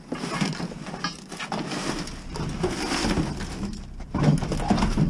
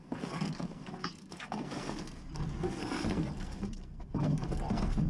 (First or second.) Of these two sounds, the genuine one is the first